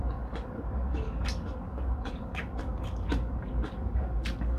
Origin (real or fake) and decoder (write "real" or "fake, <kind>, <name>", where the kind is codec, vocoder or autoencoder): fake, codec, DAC